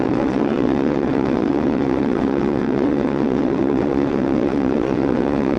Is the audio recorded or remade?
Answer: remade